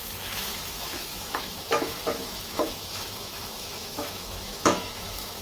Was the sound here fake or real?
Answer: fake